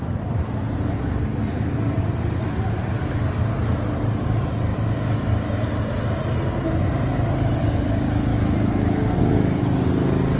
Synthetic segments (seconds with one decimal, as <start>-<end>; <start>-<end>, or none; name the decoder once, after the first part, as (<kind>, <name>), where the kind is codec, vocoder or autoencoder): 8.3-9.6 (autoencoder, DAC-VAE)